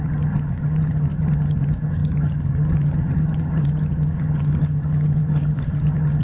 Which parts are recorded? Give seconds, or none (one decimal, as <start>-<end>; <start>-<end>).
none